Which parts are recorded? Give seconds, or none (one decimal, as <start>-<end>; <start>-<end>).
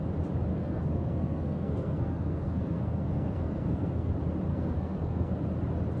0.0-0.5; 4.1-4.5; 5.3-6.0